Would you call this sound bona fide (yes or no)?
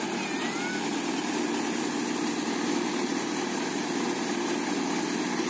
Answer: yes